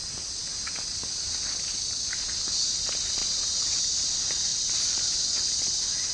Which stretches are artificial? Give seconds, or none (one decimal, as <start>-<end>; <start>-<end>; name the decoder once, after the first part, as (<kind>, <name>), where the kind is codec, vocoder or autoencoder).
3.2-4.1 (vocoder, BigVGAN v2); 4.5-5.1